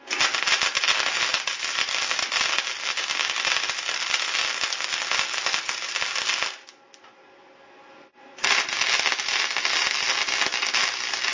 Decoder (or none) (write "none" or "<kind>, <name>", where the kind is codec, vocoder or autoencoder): none